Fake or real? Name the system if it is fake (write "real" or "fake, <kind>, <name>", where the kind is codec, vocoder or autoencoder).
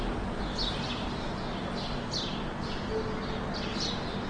real